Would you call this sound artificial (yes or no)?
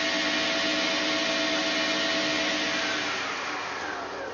no